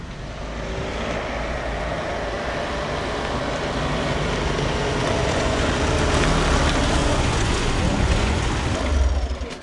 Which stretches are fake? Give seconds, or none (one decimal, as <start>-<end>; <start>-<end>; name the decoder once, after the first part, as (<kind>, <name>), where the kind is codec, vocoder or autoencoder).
5.2-5.7 (vocoder, Vocos); 7.0-8.5